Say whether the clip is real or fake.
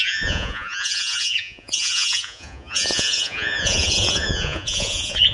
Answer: fake